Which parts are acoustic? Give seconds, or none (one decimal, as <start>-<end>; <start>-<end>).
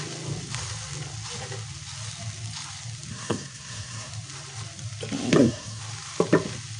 0.0-3.1; 4.1-5.3; 5.8-6.8